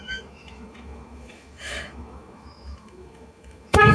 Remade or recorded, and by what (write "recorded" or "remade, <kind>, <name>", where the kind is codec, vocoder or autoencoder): remade, autoencoder, DAC-VAE